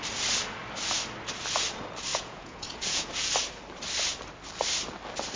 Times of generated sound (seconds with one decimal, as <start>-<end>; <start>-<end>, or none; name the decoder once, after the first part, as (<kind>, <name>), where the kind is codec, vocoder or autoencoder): 2.1-3.3 (vocoder, Vocos)